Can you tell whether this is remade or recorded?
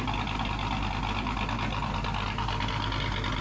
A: recorded